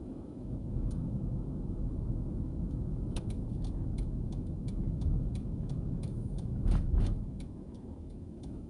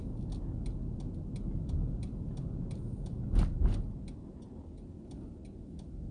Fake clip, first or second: first